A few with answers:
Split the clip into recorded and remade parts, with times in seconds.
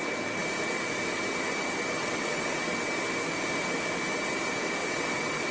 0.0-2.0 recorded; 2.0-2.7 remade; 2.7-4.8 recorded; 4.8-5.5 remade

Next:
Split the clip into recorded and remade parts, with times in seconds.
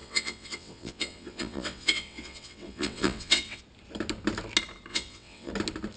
0.0-3.6 remade; 3.6-4.9 recorded; 4.9-5.5 remade; 5.5-6.0 recorded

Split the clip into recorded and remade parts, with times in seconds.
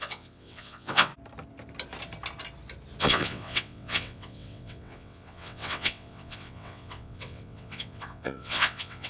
0.0-1.1 remade; 1.1-3.0 recorded; 3.0-9.1 remade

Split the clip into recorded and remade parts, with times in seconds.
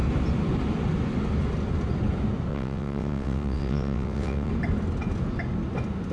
0.0-2.5 recorded; 2.5-4.5 remade; 4.5-6.1 recorded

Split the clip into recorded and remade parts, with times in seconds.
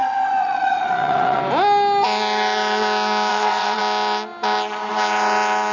0.0-1.4 remade; 1.4-3.3 recorded; 3.3-3.8 remade; 3.8-5.7 recorded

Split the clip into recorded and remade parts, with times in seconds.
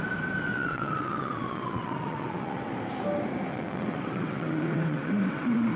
0.0-0.5 recorded; 0.5-2.7 remade; 2.7-3.5 recorded; 3.5-5.8 remade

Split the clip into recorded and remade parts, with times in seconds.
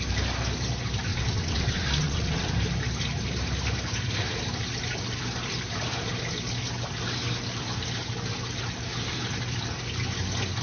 0.0-1.1 recorded; 1.1-2.5 remade; 2.5-10.6 recorded